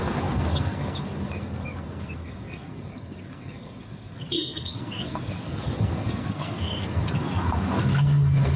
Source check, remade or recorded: remade